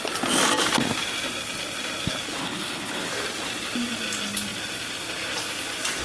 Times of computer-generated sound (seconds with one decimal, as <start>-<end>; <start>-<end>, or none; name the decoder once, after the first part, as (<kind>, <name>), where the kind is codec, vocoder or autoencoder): 2.4-3.1 (codec, HILCodec)